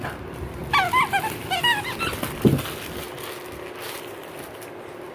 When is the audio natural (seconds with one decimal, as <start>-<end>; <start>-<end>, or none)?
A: 0.0-5.1